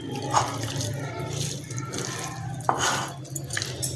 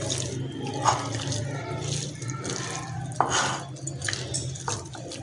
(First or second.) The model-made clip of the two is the first